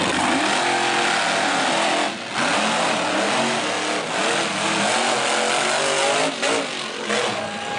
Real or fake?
real